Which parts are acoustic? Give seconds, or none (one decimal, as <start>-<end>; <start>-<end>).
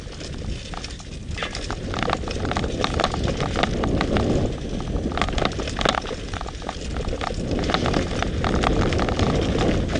0.0-10.0